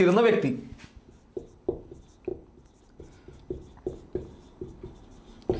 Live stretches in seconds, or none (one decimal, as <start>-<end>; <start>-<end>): 0.0-5.6

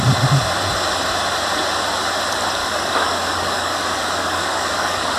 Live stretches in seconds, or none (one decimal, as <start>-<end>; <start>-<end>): 0.0-2.6